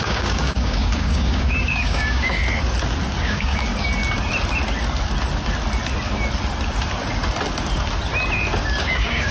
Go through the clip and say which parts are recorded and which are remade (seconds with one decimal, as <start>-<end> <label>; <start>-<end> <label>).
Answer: 0.0-2.4 remade; 2.4-3.2 recorded; 3.2-3.7 remade; 3.7-8.8 recorded; 8.8-9.3 remade